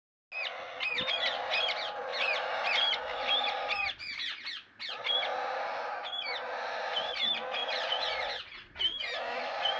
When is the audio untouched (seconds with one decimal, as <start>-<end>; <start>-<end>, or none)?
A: 0.0-7.6; 8.8-9.8